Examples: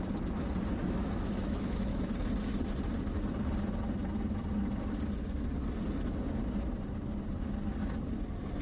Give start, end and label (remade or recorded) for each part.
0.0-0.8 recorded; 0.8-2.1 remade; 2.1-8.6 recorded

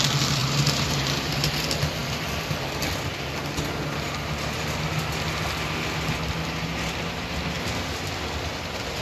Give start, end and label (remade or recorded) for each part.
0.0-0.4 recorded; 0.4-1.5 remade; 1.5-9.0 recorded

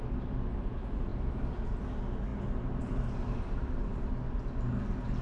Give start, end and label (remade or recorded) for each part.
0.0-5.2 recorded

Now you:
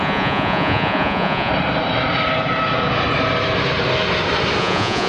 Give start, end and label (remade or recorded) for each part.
0.0-1.5 remade; 1.5-4.6 recorded; 4.6-5.1 remade

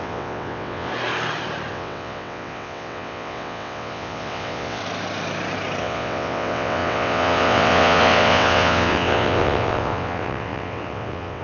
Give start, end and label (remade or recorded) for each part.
0.0-0.9 remade; 0.9-1.7 recorded; 1.7-4.8 remade; 4.8-5.8 recorded; 5.8-11.4 remade

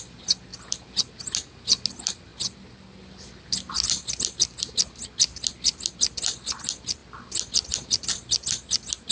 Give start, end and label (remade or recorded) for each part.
0.0-9.1 recorded

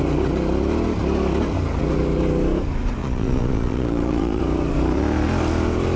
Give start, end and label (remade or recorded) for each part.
0.0-3.0 recorded; 3.0-4.4 remade; 4.4-6.0 recorded